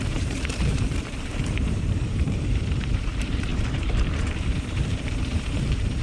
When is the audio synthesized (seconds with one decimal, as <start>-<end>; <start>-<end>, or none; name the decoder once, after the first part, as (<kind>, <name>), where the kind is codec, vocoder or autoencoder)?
0.0-6.0 (vocoder, BigVGAN v2)